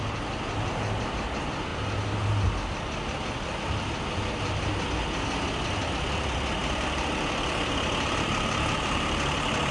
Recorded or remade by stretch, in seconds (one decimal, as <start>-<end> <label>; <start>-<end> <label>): 0.0-6.6 recorded; 6.6-9.7 remade